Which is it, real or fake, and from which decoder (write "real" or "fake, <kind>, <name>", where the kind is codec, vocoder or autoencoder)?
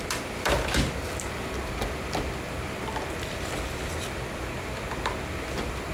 fake, vocoder, BigVGAN v2